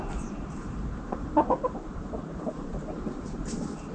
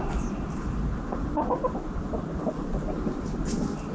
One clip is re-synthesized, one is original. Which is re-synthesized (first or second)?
first